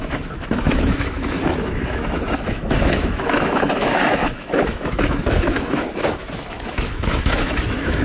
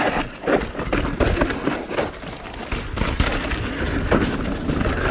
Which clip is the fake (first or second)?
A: first